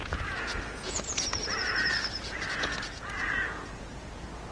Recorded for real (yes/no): no